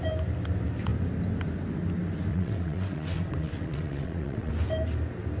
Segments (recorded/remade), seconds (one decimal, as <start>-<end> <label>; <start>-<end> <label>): 0.0-2.3 recorded; 2.3-4.5 remade; 4.5-5.4 recorded

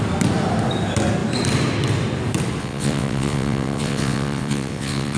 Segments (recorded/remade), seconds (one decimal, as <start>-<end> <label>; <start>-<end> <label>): 0.0-2.6 recorded; 2.6-5.2 remade

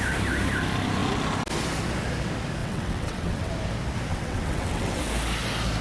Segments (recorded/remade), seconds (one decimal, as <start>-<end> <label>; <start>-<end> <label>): 0.0-2.6 recorded; 2.6-3.5 remade; 3.5-4.1 recorded; 4.1-5.0 remade; 5.0-5.8 recorded